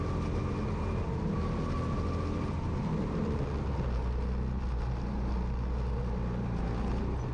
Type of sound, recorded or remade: recorded